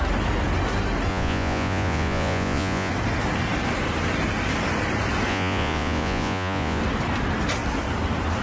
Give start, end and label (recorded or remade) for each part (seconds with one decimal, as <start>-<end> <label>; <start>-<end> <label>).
0.0-1.1 recorded; 1.1-2.9 remade; 2.9-5.3 recorded; 5.3-6.8 remade; 6.8-8.4 recorded